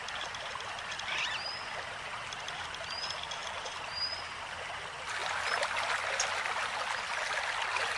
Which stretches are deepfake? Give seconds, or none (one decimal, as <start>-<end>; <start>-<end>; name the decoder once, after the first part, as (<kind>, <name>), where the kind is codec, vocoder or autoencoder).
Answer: none